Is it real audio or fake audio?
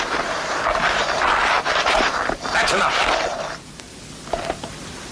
fake